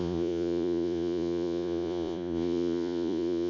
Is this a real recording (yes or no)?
no